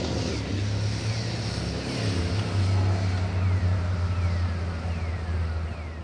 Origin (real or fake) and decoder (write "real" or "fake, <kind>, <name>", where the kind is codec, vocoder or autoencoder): real